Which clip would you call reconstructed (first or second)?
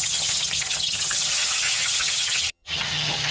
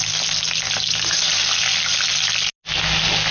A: first